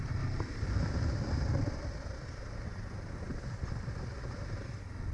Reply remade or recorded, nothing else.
remade